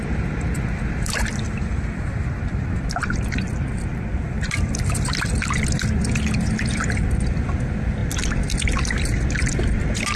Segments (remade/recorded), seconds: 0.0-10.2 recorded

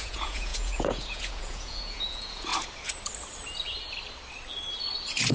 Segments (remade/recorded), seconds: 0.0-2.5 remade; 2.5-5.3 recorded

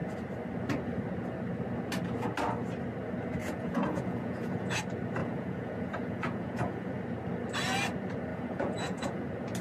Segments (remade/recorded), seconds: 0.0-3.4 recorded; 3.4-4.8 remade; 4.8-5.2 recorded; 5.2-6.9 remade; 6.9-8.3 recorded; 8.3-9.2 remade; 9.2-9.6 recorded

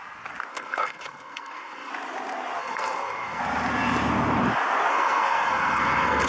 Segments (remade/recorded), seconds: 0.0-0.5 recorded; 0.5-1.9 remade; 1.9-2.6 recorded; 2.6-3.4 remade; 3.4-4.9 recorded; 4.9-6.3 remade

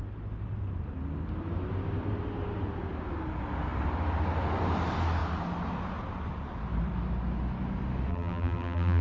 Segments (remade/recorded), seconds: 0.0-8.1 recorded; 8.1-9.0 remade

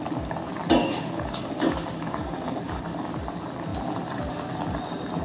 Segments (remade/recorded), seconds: 0.0-0.8 recorded; 0.8-2.8 remade; 2.8-5.2 recorded

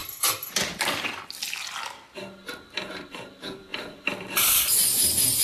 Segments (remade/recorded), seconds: 0.0-0.8 remade; 0.8-3.7 recorded; 3.7-4.7 remade; 4.7-5.4 recorded

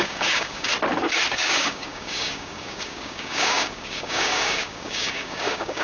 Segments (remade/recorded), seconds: 0.0-0.7 remade; 0.7-1.3 recorded; 1.3-5.8 remade